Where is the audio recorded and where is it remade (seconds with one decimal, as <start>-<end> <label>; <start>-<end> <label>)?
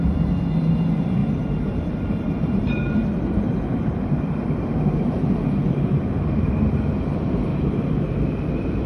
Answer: 0.0-1.2 recorded; 1.2-6.5 remade; 6.5-7.5 recorded; 7.5-8.9 remade